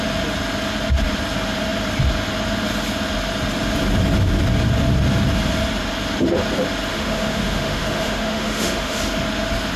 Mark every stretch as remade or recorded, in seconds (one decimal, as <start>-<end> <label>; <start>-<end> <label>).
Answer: 0.0-6.9 recorded; 6.9-9.0 remade; 9.0-9.8 recorded